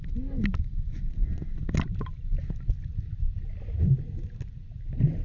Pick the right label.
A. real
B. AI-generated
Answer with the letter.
A